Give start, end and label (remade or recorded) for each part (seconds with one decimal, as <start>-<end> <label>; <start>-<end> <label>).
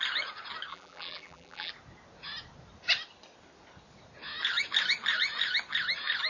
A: 0.0-0.7 recorded; 0.7-1.7 remade; 1.7-6.3 recorded